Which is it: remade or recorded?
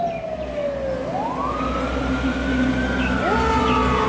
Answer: recorded